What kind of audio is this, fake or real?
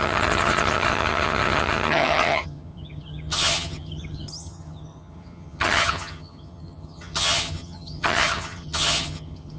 fake